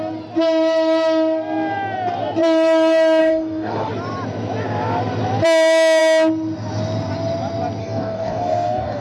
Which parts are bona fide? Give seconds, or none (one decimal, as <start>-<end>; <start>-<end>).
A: 0.0-3.2; 3.9-7.8